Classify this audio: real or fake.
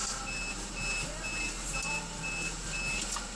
real